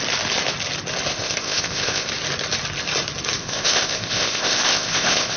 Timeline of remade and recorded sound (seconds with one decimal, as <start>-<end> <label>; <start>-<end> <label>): 0.0-1.1 recorded; 1.1-2.1 remade; 2.1-3.4 recorded; 3.4-5.4 remade